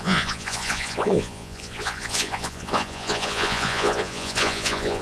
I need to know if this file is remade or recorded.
remade